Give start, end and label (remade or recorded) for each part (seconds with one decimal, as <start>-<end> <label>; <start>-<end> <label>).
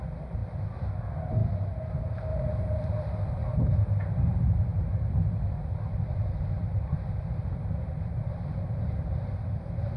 0.0-2.3 recorded; 2.3-3.7 remade; 3.7-4.7 recorded; 4.7-10.0 remade